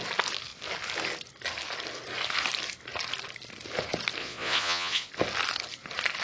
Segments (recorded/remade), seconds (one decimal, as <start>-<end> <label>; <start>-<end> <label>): 0.0-4.2 recorded; 4.2-5.1 remade; 5.1-6.2 recorded